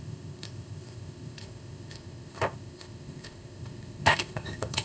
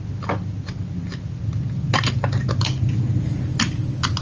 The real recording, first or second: second